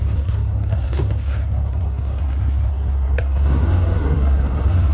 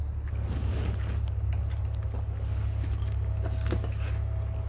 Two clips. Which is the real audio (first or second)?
second